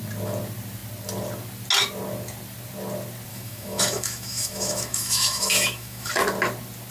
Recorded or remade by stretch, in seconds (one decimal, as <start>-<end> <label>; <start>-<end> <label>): 0.0-3.3 recorded; 3.3-6.1 remade; 6.1-6.9 recorded